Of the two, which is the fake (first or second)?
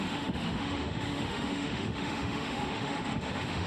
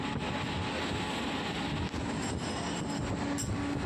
first